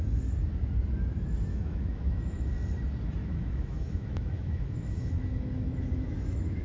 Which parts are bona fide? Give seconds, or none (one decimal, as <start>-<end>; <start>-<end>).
0.0-1.5; 2.5-3.2